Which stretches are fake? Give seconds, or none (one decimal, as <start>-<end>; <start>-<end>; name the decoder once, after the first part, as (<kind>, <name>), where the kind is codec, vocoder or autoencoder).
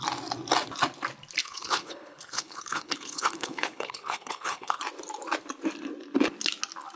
1.4-4.8 (codec, HILCodec)